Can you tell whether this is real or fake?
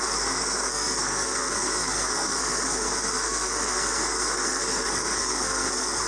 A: fake